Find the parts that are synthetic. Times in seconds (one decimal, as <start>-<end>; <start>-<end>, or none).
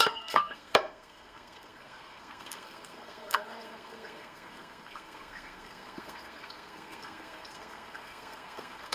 0.0-8.9